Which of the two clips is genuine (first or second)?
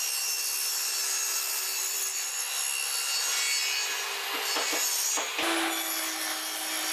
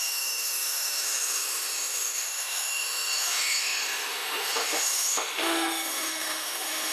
first